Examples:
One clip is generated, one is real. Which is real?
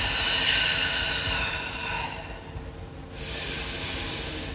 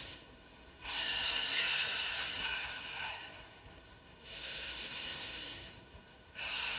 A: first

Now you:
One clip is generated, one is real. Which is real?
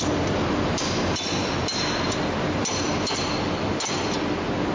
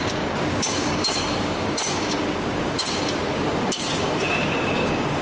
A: first